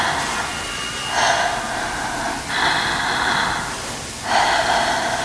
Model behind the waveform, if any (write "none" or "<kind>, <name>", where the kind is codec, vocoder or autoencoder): none